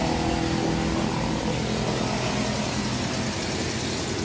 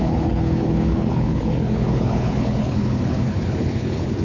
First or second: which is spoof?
second